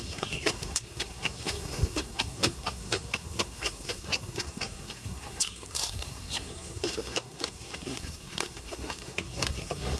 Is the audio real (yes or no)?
no